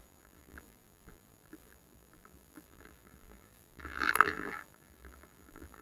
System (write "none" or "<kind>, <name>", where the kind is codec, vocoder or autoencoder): vocoder, BigVGAN v2